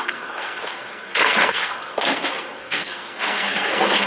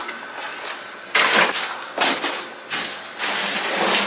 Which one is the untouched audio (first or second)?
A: second